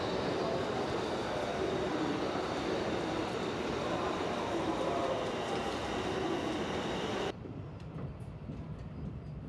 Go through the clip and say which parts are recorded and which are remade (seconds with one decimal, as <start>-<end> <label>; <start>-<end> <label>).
0.0-1.2 remade; 1.2-2.6 recorded; 2.6-5.0 remade; 5.0-7.0 recorded; 7.0-9.5 remade